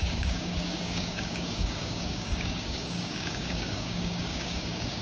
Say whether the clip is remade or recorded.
remade